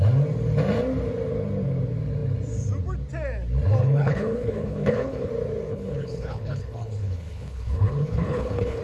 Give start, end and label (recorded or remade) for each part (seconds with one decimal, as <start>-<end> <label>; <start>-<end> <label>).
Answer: 0.0-3.8 recorded; 3.8-5.3 remade; 5.3-5.7 recorded; 5.7-8.8 remade